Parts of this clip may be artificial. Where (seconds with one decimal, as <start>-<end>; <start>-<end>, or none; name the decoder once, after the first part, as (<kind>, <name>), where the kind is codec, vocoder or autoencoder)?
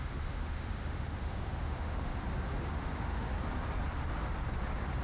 0.0-2.1 (autoencoder, DAC-VAE); 2.7-3.3